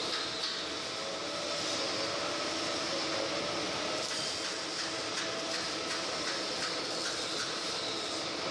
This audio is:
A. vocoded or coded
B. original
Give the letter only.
B